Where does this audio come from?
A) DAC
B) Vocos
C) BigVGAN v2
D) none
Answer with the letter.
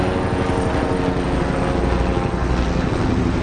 D